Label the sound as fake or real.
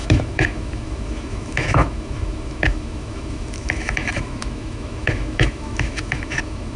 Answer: fake